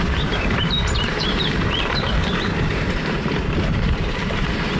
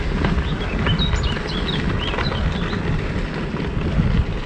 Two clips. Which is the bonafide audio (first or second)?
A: second